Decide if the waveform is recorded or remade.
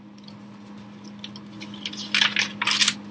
recorded